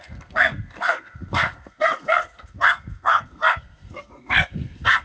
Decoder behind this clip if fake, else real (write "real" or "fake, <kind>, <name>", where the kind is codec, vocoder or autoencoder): fake, codec, SNAC